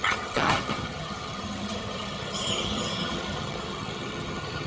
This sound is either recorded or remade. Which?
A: remade